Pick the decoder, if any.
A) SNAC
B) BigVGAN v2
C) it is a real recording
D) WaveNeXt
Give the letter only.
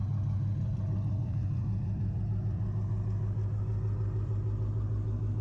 B